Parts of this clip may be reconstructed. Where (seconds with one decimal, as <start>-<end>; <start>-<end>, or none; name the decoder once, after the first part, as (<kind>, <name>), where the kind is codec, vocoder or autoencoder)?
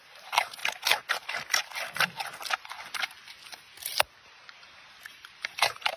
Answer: 0.0-0.6 (vocoder, BigVGAN v2); 4.2-6.0